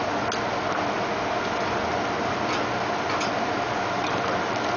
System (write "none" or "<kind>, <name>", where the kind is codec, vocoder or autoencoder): none